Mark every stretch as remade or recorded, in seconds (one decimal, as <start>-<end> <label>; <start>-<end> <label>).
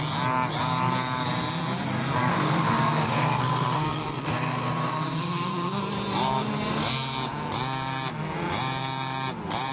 0.0-2.3 recorded; 2.3-5.8 remade; 5.8-9.7 recorded